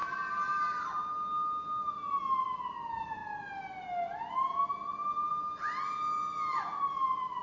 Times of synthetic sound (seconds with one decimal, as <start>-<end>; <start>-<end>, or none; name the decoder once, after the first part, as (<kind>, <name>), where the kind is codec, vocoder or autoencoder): none